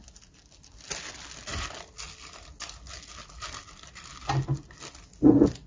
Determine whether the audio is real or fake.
real